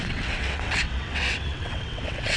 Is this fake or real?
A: fake